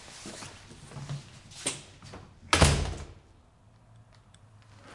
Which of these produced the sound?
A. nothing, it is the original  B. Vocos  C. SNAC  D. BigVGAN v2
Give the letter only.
A